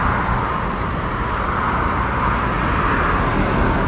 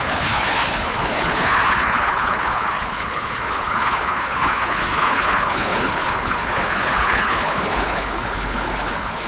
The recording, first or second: first